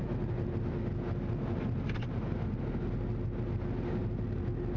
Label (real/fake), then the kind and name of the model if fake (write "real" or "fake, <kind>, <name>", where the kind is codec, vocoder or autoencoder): real